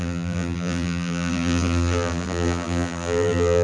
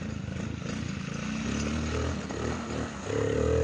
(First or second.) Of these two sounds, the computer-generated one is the first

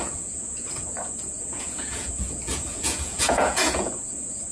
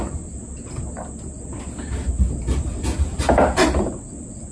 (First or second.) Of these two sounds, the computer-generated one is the first